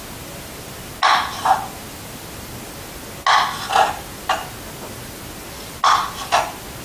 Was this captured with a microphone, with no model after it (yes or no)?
yes